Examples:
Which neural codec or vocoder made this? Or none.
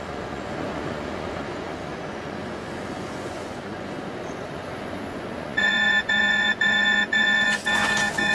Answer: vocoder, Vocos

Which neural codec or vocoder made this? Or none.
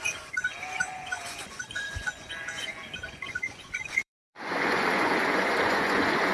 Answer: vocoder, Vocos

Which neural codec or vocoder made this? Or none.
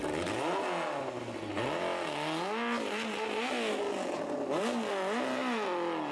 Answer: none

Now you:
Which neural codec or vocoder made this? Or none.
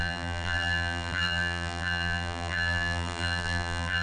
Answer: vocoder, BigVGAN v2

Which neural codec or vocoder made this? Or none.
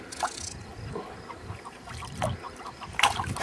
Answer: none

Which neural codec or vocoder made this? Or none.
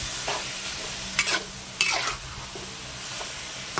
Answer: none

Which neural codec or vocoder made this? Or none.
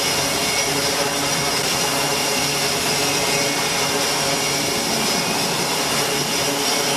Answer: none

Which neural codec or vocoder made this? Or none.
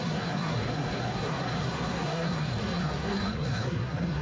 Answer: codec, SNAC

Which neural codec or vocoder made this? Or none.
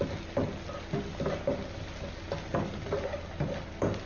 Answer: none